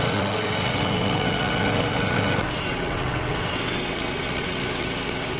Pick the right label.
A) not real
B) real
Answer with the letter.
A